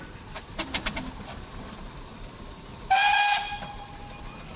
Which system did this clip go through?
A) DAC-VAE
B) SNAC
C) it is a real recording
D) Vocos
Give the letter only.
C